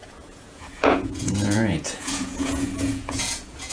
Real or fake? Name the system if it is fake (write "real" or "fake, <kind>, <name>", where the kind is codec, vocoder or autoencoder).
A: fake, vocoder, Vocos